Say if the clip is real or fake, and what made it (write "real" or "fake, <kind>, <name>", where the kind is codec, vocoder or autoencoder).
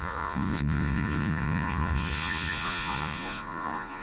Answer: fake, vocoder, Vocos